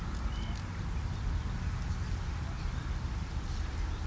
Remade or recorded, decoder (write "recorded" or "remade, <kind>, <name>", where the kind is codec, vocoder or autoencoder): recorded